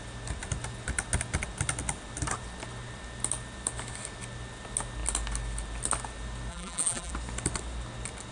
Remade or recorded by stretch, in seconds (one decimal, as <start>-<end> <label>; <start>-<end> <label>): 0.0-6.5 recorded; 6.5-7.1 remade; 7.1-8.3 recorded